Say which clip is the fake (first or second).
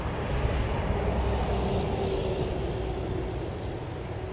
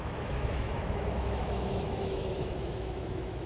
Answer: second